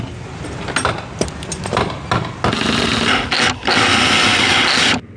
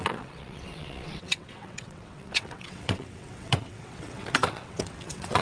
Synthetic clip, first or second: second